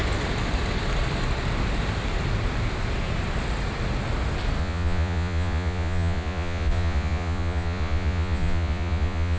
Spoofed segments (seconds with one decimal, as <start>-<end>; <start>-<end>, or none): 4.6-9.4